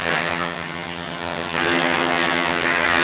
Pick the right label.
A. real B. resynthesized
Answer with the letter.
B